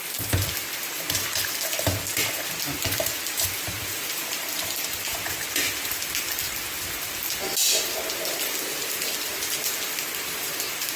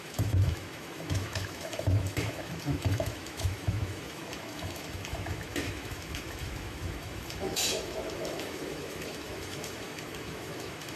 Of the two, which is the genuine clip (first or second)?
first